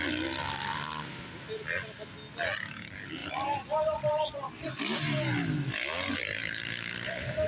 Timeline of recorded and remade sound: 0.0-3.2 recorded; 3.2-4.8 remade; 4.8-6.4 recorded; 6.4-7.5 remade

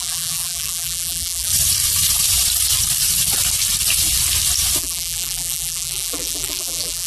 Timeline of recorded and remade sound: 0.0-1.5 remade; 1.5-4.8 recorded; 4.8-7.1 remade